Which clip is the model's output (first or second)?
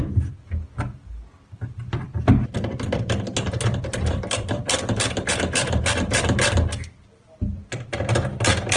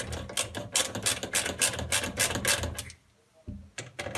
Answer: first